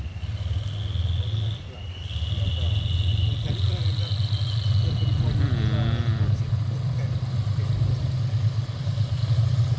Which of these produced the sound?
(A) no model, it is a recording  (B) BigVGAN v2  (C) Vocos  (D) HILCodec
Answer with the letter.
A